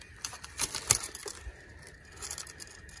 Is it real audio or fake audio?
real